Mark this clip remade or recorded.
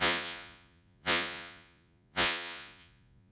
remade